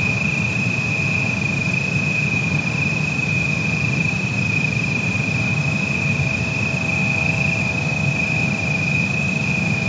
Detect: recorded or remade recorded